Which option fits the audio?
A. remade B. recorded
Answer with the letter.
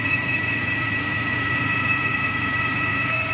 A